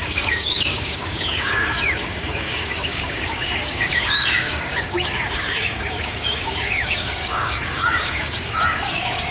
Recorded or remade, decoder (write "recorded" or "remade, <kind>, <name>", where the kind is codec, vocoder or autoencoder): remade, codec, DAC